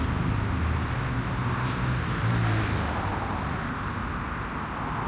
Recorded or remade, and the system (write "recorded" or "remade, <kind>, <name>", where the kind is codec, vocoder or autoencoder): recorded